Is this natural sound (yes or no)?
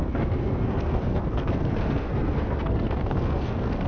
no